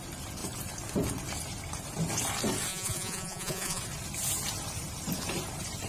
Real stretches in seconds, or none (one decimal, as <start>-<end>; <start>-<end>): 0.0-2.7; 3.8-5.9